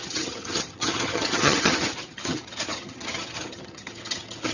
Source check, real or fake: fake